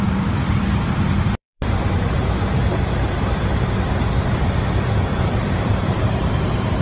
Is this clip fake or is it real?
fake